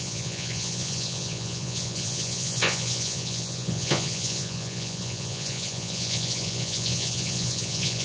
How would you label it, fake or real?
fake